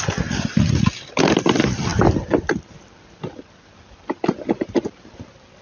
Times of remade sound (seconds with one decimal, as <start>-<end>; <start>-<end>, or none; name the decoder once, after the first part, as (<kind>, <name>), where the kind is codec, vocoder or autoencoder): none